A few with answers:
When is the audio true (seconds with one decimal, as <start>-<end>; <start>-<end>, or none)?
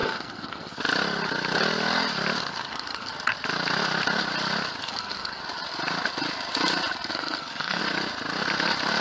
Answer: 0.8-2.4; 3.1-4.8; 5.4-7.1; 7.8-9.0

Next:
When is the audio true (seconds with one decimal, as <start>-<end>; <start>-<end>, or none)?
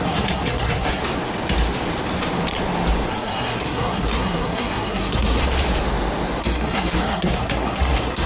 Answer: 1.0-3.1; 5.4-6.4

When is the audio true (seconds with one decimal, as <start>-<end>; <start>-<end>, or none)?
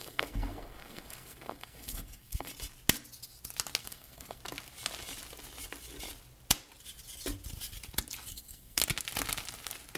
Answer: 2.5-3.8; 4.4-8.3; 8.8-10.0